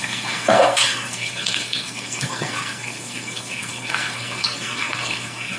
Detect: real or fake fake